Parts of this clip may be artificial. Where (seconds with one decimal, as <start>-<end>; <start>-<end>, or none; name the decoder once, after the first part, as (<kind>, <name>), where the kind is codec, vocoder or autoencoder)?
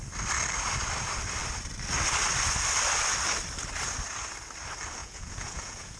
5.0-6.0 (vocoder, Vocos)